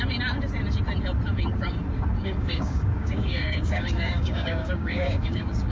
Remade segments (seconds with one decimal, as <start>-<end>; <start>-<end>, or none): 2.2-5.7